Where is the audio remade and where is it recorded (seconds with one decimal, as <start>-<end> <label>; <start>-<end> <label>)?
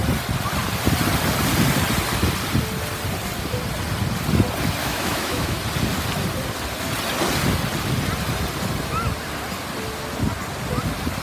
0.0-4.8 recorded; 4.8-5.6 remade; 5.6-11.2 recorded